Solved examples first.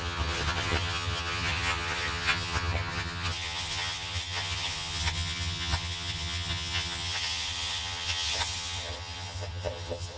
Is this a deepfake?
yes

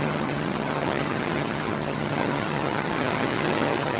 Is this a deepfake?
yes